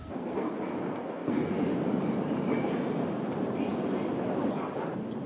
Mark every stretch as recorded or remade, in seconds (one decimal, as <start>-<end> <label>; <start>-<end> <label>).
0.0-1.7 remade; 1.7-5.3 recorded